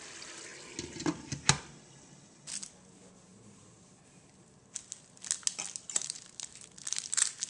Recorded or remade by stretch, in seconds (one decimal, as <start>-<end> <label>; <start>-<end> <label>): 0.0-7.5 recorded